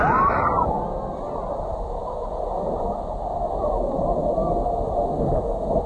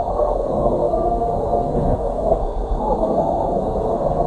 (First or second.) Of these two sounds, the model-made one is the second